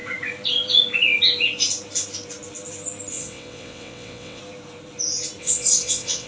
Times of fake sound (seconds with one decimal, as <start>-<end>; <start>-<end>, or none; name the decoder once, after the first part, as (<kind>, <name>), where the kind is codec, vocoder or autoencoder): 3.1-4.4 (vocoder, WaveNeXt); 5.4-6.3